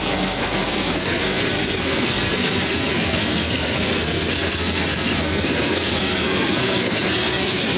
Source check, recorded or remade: remade